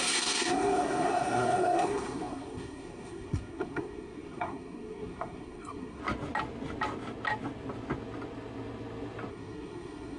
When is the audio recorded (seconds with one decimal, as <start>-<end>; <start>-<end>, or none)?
6.0-9.3

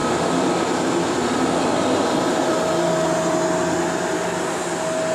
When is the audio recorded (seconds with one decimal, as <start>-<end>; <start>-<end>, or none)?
0.0-5.1

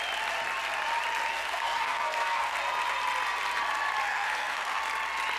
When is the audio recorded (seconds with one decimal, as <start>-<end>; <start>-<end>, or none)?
0.0-1.3; 2.6-4.1; 4.8-5.4

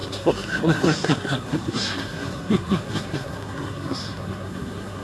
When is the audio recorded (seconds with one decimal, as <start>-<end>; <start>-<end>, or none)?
none

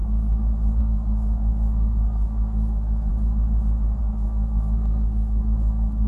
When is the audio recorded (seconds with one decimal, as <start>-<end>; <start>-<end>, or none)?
0.0-0.8; 3.1-4.0